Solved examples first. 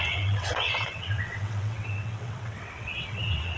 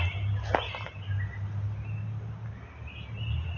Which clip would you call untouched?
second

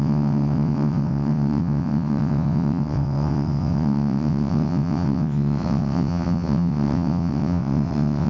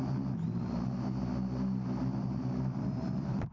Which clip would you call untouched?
second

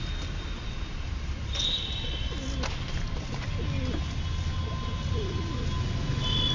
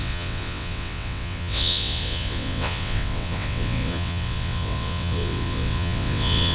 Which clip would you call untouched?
first